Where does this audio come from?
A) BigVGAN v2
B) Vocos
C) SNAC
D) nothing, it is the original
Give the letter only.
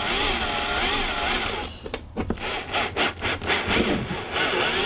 D